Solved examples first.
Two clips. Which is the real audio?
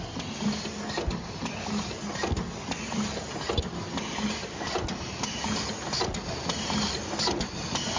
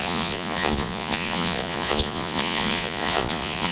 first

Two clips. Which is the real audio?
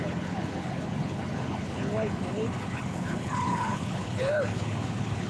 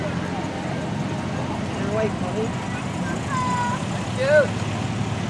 second